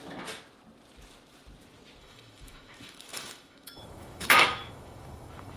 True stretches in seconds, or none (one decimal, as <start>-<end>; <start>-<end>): 0.0-2.0